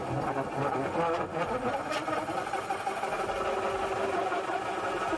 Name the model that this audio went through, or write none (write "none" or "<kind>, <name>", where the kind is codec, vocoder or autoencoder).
none